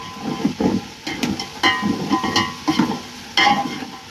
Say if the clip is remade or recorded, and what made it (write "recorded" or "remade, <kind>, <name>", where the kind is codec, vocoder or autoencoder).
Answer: recorded